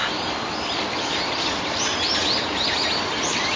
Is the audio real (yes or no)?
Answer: yes